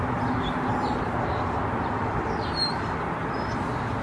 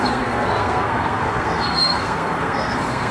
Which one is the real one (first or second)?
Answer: first